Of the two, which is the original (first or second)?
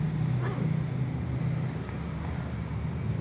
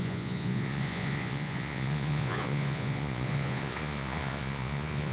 first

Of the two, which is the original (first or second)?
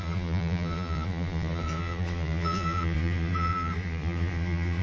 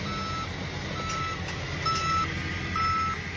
second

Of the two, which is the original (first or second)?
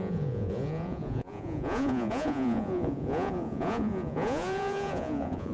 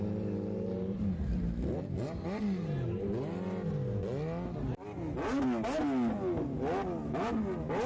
second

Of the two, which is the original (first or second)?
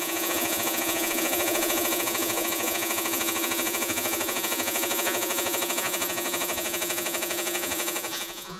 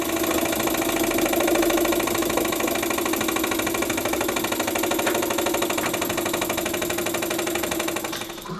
second